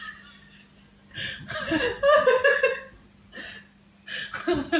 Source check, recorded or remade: recorded